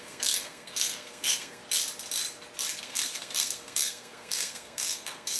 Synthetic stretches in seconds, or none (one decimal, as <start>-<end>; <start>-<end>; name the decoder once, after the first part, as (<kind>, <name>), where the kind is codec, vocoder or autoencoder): 0.0-1.6 (codec, SNAC); 2.8-5.4